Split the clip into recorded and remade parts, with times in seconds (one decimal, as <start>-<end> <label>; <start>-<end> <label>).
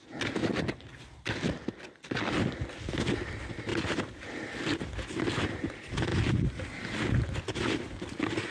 0.0-8.5 recorded